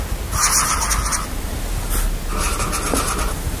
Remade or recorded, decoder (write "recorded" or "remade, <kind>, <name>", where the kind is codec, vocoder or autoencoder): recorded